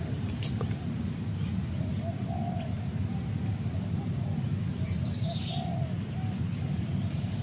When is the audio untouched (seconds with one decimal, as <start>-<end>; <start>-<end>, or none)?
1.6-4.7